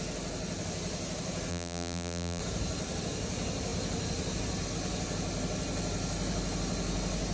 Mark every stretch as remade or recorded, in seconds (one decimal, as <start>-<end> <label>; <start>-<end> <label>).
0.0-1.5 recorded; 1.5-2.4 remade; 2.4-7.3 recorded